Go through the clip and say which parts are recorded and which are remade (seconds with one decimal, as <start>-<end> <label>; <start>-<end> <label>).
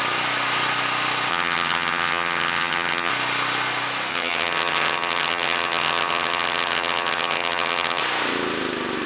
0.0-1.3 recorded; 1.3-3.1 remade; 3.1-4.1 recorded; 4.1-8.0 remade; 8.0-9.1 recorded